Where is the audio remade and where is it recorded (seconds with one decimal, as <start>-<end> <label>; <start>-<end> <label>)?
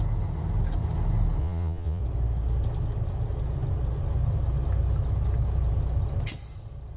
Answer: 0.0-1.4 recorded; 1.4-2.0 remade; 2.0-7.0 recorded